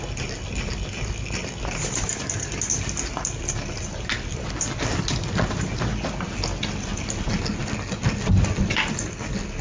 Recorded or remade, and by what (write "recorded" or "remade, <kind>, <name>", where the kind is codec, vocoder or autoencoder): recorded